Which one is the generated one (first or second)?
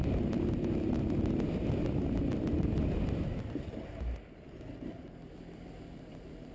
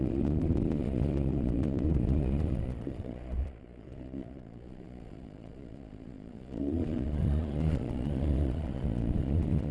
second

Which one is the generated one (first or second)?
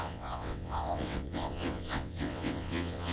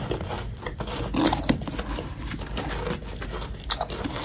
first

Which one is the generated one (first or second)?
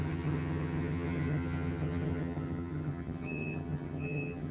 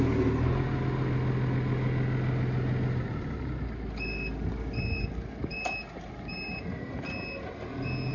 first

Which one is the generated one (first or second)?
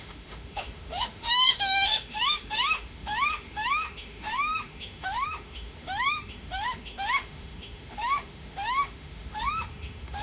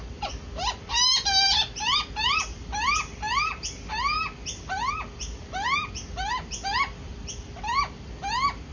first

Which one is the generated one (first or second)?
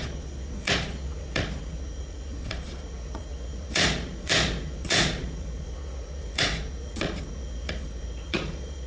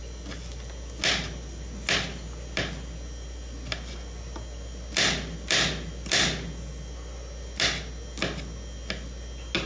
first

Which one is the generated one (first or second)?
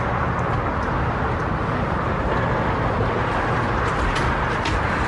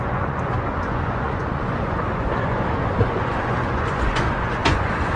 second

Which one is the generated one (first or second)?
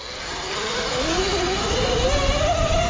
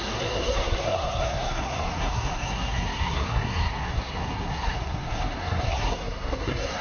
second